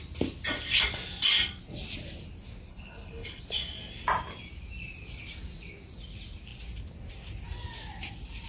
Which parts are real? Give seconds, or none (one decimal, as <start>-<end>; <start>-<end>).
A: 0.0-2.7; 3.4-8.5

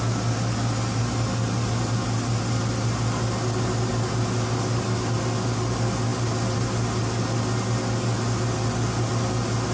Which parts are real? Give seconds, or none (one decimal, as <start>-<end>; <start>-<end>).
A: 0.0-9.7

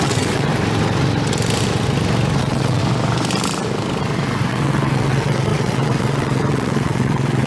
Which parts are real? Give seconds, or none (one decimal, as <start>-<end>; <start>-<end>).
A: 0.5-2.4; 2.8-4.5

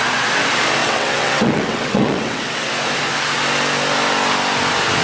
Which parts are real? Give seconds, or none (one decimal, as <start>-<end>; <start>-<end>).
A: 0.0-0.8; 2.7-5.0

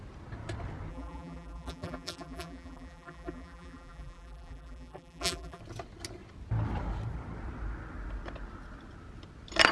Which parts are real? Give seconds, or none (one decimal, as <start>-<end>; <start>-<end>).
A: 0.0-0.9; 5.6-9.7

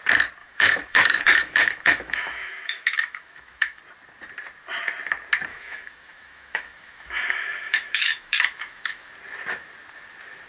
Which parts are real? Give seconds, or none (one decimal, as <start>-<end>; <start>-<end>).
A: 0.0-0.4; 3.8-5.5; 9.1-10.5

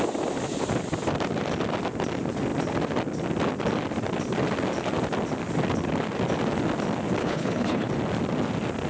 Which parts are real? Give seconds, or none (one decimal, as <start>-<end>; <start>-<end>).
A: 0.0-7.2; 7.9-8.9